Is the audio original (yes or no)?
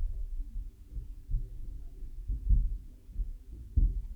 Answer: no